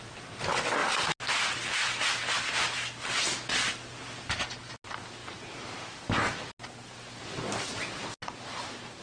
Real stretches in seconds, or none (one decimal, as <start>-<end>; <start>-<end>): 0.0-9.0